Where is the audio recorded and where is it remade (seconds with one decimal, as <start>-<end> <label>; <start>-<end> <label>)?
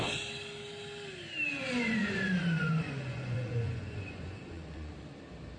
0.0-1.5 recorded; 1.5-4.9 remade; 4.9-5.6 recorded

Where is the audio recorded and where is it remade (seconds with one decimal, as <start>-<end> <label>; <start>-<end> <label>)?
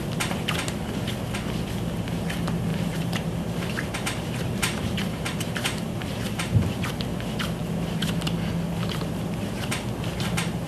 0.0-2.7 recorded; 2.7-6.9 remade; 6.9-10.7 recorded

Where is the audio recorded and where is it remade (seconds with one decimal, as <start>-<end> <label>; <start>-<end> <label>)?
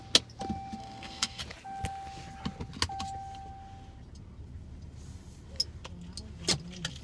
0.0-0.8 recorded; 0.8-1.4 remade; 1.4-7.0 recorded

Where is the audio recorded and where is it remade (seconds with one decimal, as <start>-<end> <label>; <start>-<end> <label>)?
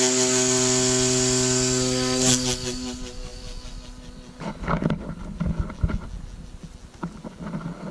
0.0-7.9 recorded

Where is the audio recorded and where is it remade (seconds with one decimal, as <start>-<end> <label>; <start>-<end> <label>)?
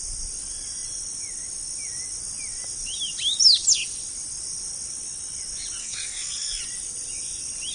0.0-5.8 recorded; 5.8-6.6 remade; 6.6-7.7 recorded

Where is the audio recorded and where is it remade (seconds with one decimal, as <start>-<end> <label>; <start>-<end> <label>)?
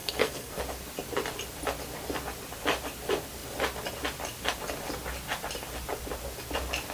0.0-0.6 remade; 0.6-6.9 recorded